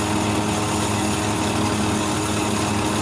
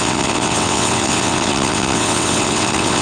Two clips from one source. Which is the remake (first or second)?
second